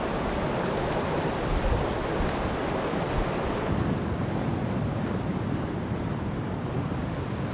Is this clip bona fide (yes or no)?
yes